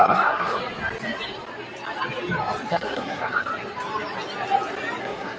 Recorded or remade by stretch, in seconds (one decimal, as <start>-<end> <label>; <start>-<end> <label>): 0.0-0.6 remade; 0.6-2.7 recorded; 2.7-3.5 remade; 3.5-5.0 recorded; 5.0-5.4 remade